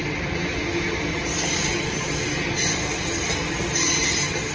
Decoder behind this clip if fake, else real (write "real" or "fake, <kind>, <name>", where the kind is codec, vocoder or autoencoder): real